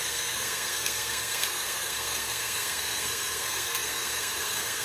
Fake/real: fake